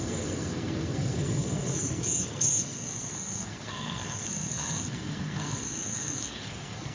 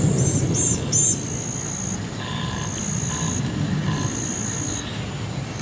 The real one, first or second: second